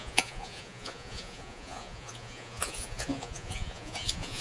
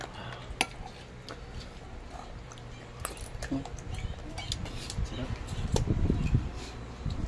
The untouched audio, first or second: second